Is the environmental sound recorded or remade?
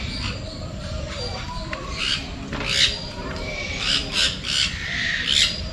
remade